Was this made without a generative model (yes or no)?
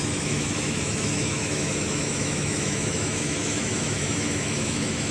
no